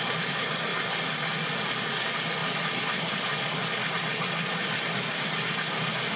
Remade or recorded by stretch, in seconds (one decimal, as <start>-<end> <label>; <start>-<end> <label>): 0.0-6.2 recorded